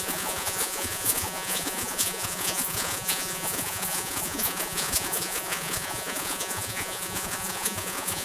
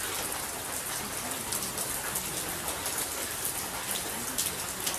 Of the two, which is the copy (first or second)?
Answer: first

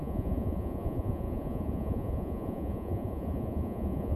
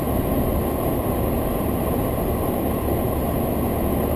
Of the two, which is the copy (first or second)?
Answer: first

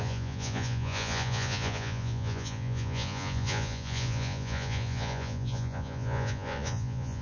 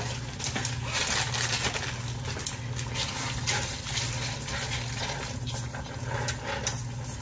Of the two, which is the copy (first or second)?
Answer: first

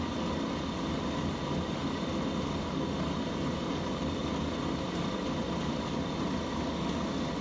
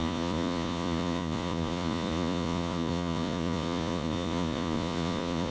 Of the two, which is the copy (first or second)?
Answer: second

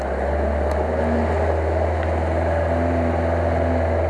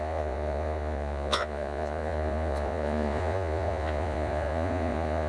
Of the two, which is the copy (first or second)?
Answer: second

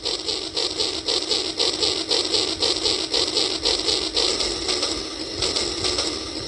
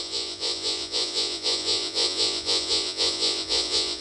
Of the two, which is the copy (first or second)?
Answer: second